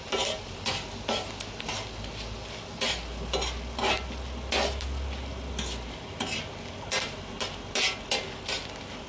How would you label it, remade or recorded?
recorded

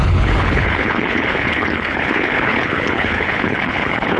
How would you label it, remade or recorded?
remade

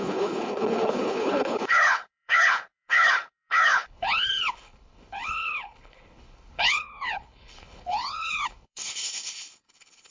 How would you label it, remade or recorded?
remade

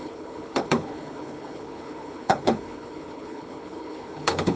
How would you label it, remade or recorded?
remade